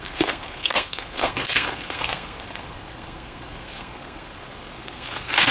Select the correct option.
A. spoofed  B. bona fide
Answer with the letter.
A